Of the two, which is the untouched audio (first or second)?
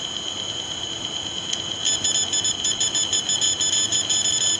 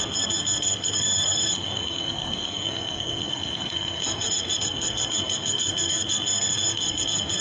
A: first